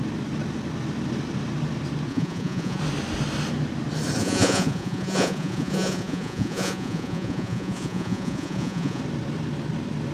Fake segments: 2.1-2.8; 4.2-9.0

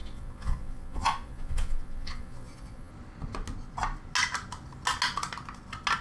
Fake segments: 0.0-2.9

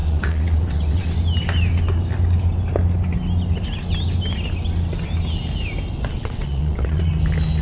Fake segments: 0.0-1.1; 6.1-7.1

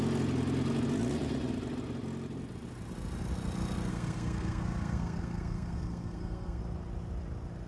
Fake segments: 3.9-6.6